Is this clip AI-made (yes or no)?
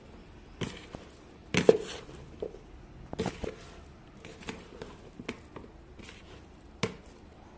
no